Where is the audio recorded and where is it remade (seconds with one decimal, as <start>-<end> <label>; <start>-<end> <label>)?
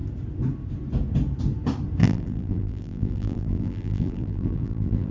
0.0-2.0 recorded; 2.0-5.1 remade